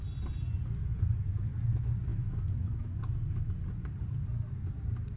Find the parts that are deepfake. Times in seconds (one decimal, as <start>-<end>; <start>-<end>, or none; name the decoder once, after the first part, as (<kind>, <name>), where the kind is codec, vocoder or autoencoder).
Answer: 2.1-3.0 (autoencoder, DAC-VAE)